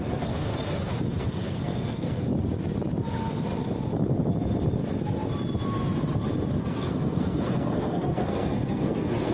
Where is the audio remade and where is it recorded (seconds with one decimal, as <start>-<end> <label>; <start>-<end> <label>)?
0.0-0.5 remade; 0.5-1.2 recorded; 1.2-2.3 remade; 2.3-6.6 recorded; 6.6-9.3 remade